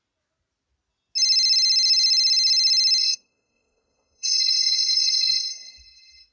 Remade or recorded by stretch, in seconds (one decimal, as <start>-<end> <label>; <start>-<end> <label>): 0.0-3.0 recorded; 3.0-5.8 remade; 5.8-6.3 recorded